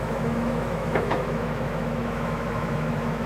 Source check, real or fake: fake